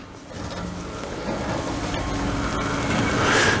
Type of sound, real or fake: real